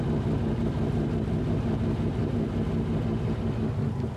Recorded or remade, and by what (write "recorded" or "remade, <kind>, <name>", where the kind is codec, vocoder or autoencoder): recorded